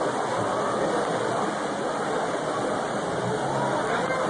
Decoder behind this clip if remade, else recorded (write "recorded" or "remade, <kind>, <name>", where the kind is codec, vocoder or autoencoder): recorded